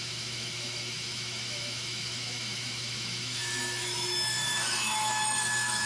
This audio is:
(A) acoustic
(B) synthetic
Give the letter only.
B